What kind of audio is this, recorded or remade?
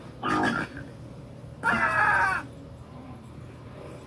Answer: recorded